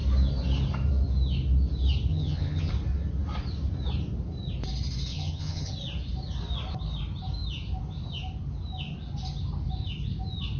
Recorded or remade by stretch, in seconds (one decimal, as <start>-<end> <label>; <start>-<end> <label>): 0.0-2.1 recorded; 2.1-2.7 remade; 2.7-5.1 recorded; 5.1-5.7 remade; 5.7-10.6 recorded